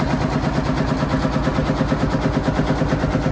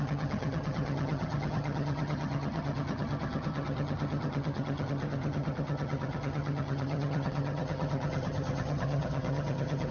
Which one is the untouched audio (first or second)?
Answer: first